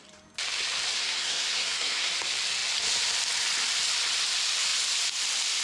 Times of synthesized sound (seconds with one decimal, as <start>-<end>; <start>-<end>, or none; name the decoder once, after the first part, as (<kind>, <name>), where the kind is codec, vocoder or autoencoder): 1.0-2.1 (codec, SNAC)